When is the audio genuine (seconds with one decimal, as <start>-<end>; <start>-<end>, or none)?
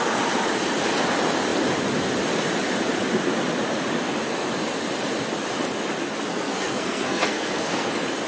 0.0-6.3; 7.9-8.3